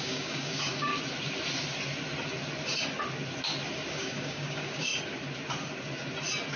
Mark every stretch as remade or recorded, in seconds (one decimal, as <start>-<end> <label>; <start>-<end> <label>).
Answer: 0.0-0.9 remade; 0.9-3.9 recorded; 3.9-4.9 remade; 4.9-6.6 recorded

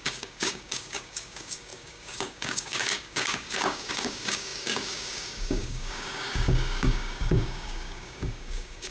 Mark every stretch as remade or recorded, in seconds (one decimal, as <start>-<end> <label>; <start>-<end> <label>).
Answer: 0.0-8.9 remade

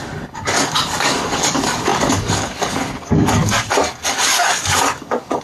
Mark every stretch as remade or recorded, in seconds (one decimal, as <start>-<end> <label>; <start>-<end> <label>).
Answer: 0.0-5.4 remade

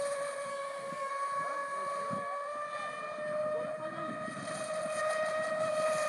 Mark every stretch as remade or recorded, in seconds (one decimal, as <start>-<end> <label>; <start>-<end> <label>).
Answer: 0.0-0.5 recorded; 0.5-1.1 remade; 1.1-6.1 recorded

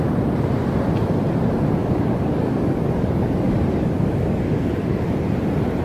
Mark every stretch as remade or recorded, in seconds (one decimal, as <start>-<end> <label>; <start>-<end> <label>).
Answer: 0.0-1.8 recorded; 1.8-5.1 remade; 5.1-5.8 recorded

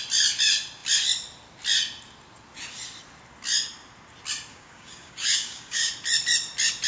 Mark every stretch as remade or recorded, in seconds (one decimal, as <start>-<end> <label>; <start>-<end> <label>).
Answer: 0.0-4.5 recorded; 4.5-5.9 remade; 5.9-6.9 recorded